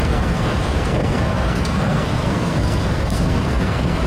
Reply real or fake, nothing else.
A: fake